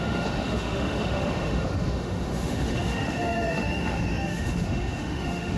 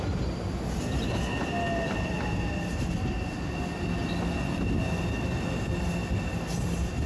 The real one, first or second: second